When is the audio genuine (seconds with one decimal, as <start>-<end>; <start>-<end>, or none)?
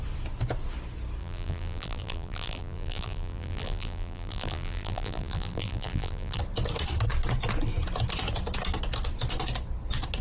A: 0.0-1.2; 6.4-10.2